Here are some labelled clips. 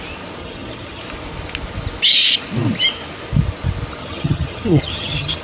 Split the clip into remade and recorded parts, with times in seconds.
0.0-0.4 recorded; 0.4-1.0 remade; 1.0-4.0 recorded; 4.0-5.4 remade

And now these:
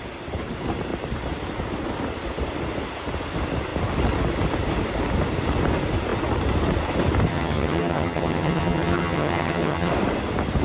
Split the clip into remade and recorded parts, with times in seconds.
0.0-7.3 recorded; 7.3-9.9 remade; 9.9-10.6 recorded